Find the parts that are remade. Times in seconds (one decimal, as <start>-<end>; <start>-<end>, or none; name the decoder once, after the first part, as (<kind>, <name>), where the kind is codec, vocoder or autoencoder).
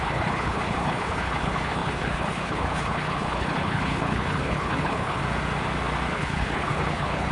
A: 0.0-5.2 (codec, HILCodec); 6.1-7.3